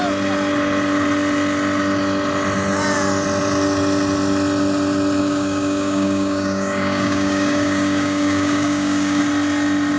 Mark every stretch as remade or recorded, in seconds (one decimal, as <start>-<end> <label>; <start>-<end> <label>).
0.0-5.2 recorded; 5.2-9.2 remade; 9.2-10.0 recorded